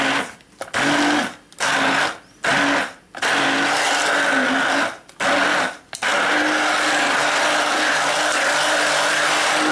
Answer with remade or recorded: recorded